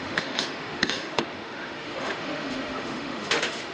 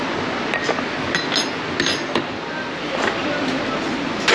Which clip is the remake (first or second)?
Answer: first